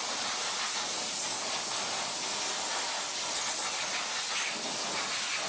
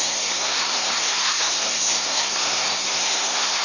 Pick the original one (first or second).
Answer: first